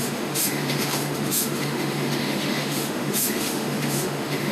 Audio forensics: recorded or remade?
remade